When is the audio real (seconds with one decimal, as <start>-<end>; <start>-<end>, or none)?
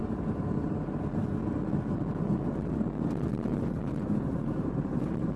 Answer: 0.5-3.5